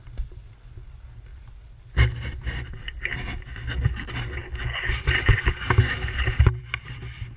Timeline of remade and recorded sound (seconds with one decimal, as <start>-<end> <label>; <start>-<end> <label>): 0.0-7.4 recorded